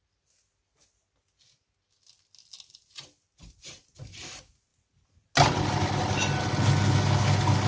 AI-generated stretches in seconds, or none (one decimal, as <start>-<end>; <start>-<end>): none